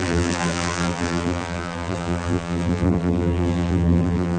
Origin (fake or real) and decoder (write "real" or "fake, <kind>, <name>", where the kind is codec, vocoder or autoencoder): fake, vocoder, BigVGAN v2